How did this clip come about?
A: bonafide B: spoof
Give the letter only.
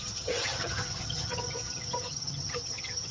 B